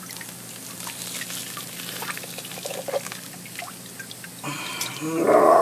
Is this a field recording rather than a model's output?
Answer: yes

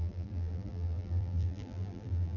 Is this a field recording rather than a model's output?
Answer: no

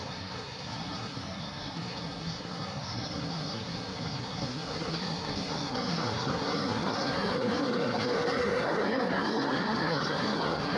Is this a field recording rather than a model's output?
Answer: no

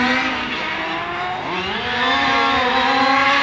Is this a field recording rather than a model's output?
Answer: yes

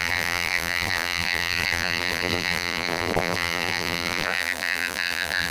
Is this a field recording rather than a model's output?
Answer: no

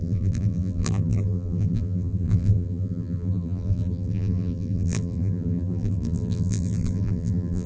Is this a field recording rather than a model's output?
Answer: no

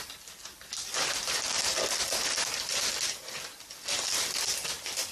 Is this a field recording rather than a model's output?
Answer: yes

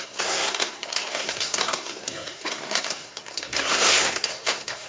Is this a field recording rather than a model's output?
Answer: no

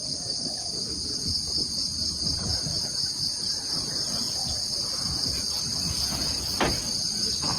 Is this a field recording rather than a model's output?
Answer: yes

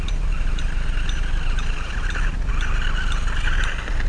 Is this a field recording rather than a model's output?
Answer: yes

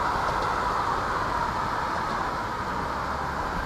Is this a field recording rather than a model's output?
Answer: yes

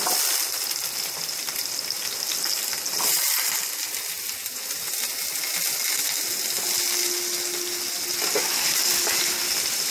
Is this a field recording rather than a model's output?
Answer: yes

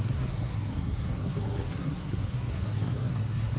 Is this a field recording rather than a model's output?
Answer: no